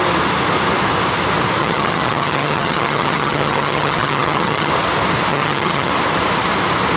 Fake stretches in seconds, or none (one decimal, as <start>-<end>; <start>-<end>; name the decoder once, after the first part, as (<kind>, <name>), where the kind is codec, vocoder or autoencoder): 1.6-4.7 (vocoder, HiFi-GAN); 5.3-5.9